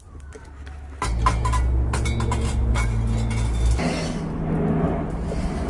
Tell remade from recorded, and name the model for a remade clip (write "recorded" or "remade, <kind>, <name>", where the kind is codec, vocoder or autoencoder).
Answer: recorded